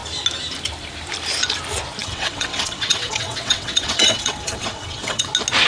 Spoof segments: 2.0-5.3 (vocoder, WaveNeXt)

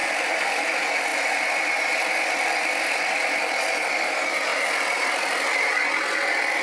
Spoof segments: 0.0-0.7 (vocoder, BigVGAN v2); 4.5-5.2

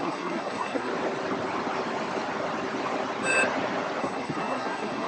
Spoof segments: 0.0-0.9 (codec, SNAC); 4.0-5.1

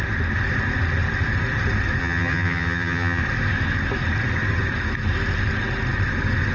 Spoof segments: 2.0-3.2 (vocoder, HiFi-GAN)

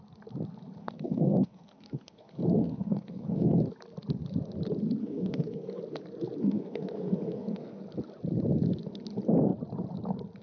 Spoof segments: 0.8-3.6 (codec, SNAC); 5.0-5.8; 6.4-7.8

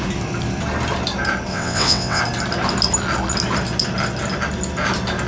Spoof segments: 1.5-2.2 (vocoder, WaveNeXt)

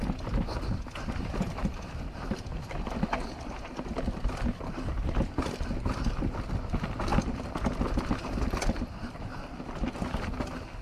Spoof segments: none

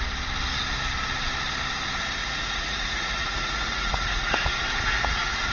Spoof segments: 2.2-5.5 (vocoder, Vocos)